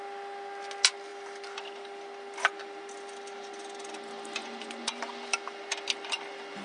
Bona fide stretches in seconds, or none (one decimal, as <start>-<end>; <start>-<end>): 0.0-4.4; 4.9-6.6